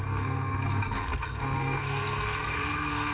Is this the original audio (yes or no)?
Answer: no